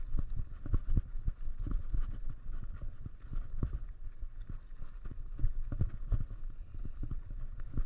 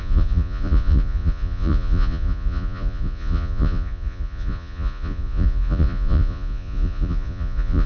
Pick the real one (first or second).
first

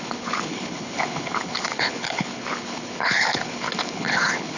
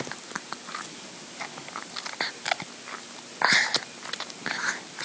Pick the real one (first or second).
second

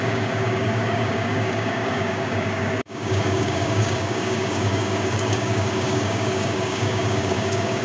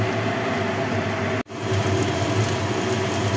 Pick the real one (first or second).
second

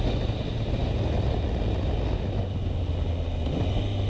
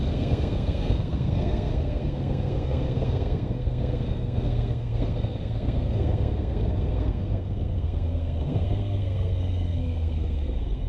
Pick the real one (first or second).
first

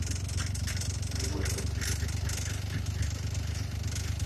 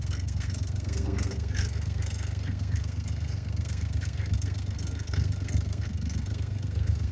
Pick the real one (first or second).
first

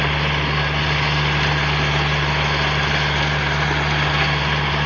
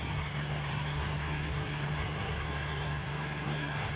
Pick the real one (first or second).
first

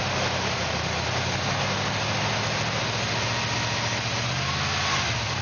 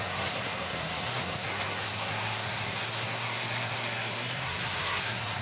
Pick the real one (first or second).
first